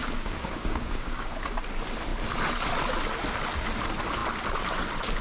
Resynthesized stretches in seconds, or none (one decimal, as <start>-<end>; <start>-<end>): 0.0-1.5